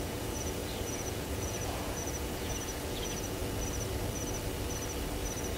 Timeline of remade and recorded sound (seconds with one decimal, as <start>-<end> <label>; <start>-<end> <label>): 0.0-3.4 remade; 3.4-5.6 recorded